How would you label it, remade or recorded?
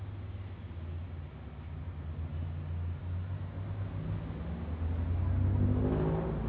recorded